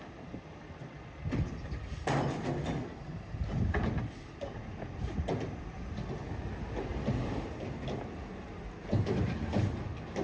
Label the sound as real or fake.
real